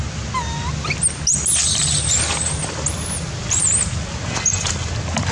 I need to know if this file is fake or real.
real